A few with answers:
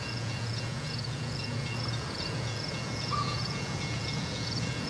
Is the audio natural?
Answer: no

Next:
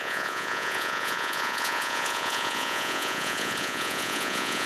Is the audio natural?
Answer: no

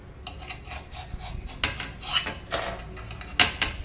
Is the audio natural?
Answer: yes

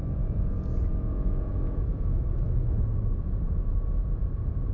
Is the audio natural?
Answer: no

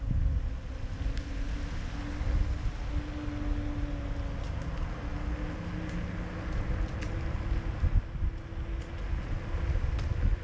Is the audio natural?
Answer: yes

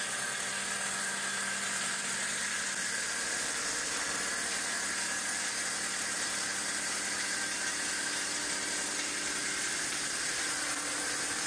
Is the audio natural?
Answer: yes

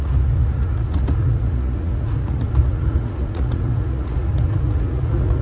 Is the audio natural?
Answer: no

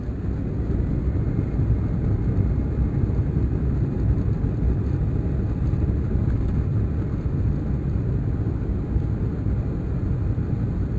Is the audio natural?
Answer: yes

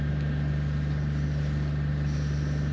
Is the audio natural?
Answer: yes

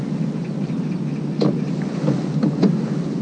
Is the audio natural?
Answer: yes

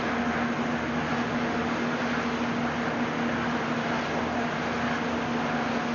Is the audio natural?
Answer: yes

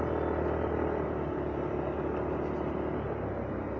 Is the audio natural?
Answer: yes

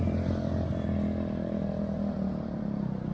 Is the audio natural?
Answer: yes